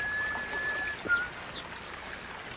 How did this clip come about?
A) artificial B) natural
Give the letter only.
B